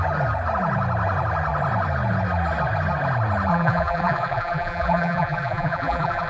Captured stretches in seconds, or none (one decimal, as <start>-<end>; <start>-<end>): 0.0-3.5